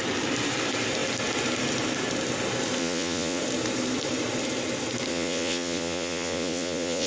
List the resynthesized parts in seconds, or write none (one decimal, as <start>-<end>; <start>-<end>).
2.8-3.4; 5.1-7.1